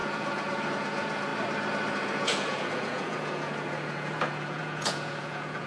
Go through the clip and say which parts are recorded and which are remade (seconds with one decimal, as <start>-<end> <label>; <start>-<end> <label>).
0.0-1.3 remade; 1.3-1.9 recorded; 1.9-5.7 remade